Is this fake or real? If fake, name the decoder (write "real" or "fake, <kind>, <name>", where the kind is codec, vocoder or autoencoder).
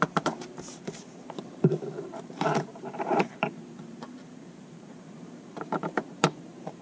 fake, vocoder, BigVGAN v2